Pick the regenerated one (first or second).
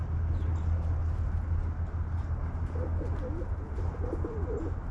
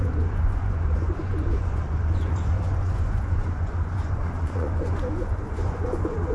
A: second